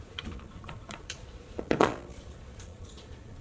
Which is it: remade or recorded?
remade